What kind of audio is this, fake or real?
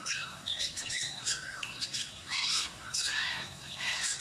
fake